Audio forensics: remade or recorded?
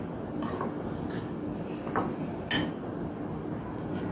recorded